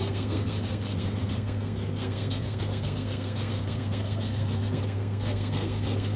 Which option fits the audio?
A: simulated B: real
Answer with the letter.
A